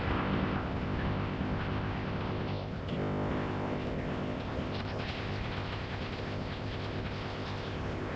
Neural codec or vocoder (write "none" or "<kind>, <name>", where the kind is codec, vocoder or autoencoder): codec, ZipCodec